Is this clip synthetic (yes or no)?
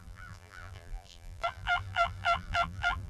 yes